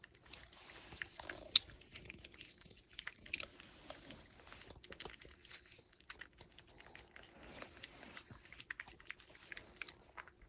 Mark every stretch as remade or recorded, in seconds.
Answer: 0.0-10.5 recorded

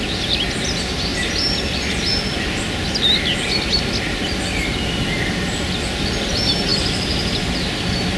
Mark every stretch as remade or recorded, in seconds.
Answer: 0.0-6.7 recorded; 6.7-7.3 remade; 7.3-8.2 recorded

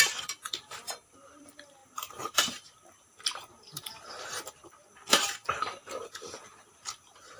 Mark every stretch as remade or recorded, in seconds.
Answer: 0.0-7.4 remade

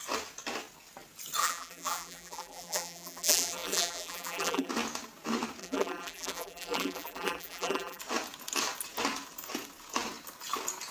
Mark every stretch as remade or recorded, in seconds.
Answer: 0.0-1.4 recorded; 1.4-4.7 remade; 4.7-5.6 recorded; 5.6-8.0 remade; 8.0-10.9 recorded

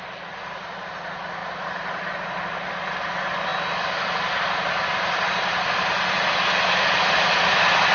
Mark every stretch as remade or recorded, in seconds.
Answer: 0.0-7.9 recorded